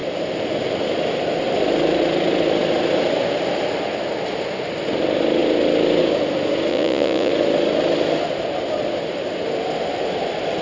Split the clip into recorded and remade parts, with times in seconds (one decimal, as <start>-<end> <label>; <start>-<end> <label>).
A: 0.0-6.7 recorded; 6.7-7.3 remade; 7.3-10.6 recorded